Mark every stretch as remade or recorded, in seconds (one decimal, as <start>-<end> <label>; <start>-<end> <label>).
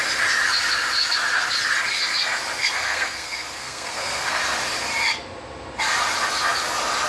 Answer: 0.0-2.6 recorded; 2.6-4.4 remade; 4.4-7.1 recorded